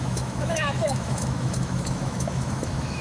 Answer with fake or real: fake